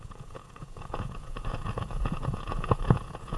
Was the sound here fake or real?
fake